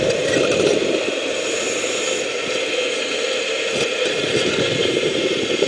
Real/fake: fake